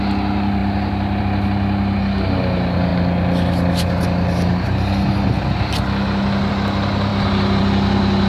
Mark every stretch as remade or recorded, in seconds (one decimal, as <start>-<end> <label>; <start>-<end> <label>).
0.0-8.3 recorded